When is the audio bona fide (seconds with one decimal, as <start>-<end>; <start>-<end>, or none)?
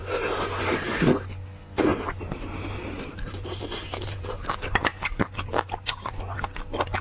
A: 0.0-1.9; 6.1-7.0